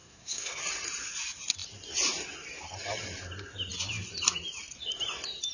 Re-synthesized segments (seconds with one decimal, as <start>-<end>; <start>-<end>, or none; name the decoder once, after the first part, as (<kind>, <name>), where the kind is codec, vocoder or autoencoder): 0.0-0.6 (codec, SNAC)